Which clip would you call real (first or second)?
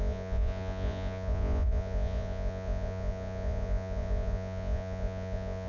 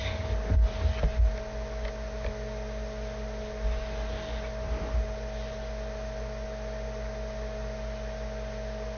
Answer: second